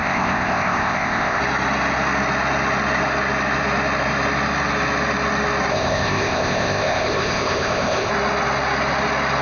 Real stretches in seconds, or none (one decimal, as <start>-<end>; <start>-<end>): 1.4-5.7; 8.1-9.4